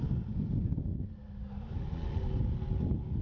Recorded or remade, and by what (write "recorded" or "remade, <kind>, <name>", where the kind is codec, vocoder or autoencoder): recorded